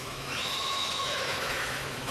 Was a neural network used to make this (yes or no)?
yes